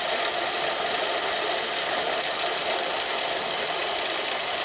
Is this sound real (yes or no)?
no